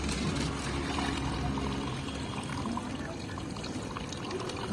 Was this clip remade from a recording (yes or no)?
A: no